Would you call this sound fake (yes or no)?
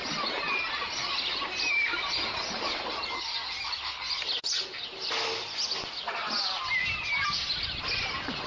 no